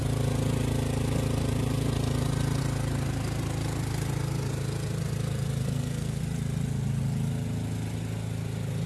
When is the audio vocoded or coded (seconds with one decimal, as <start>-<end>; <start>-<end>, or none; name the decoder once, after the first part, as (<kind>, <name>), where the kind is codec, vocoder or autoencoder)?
5.6-6.2 (codec, SNAC)